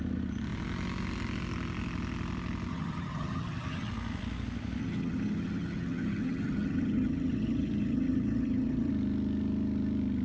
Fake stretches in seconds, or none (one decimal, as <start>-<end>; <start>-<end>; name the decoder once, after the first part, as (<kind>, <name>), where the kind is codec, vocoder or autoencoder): 2.7-3.9 (vocoder, HiFi-GAN); 4.8-8.9